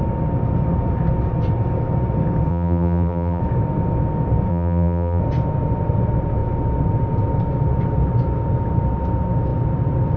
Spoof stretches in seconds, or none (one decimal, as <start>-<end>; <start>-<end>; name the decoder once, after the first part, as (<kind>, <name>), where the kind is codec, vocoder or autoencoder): 2.5-3.4 (vocoder, BigVGAN v2); 4.5-5.2